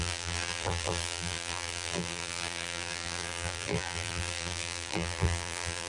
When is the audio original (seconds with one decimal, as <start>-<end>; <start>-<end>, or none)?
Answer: none